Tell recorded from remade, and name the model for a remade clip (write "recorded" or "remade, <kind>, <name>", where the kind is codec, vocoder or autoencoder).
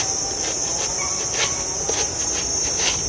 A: recorded